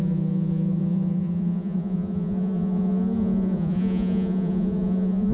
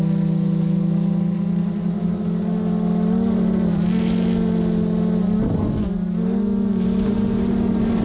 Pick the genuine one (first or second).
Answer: second